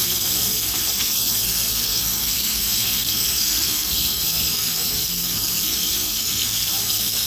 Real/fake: fake